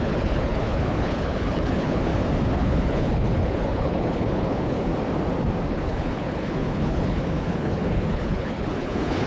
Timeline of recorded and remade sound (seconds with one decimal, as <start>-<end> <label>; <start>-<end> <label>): 0.0-2.1 remade; 2.1-2.6 recorded; 2.6-4.9 remade; 4.9-5.7 recorded; 5.7-9.3 remade